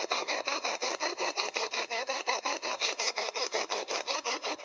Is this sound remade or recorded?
remade